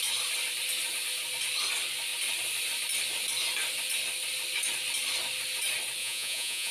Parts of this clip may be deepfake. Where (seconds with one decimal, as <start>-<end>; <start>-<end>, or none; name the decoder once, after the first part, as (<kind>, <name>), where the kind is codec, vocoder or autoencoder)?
6.0-6.7 (vocoder, Vocos)